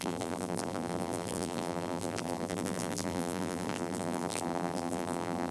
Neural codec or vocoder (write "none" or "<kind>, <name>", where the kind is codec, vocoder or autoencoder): vocoder, BigVGAN v2